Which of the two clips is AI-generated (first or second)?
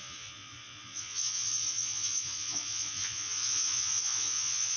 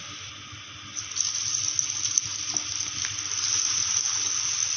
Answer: first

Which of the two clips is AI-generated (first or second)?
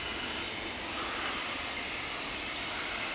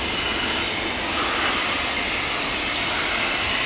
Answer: first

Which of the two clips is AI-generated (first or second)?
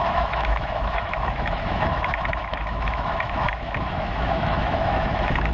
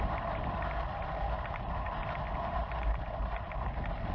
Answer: first